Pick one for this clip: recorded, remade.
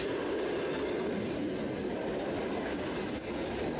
recorded